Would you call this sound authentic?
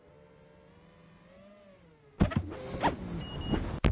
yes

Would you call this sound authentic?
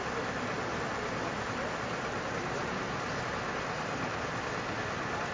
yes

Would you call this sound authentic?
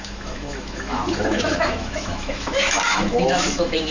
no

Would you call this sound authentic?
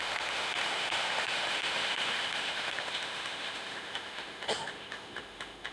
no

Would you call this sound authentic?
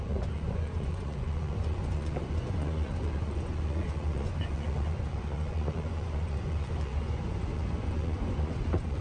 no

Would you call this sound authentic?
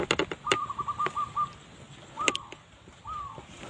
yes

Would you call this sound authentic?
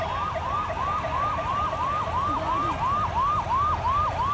yes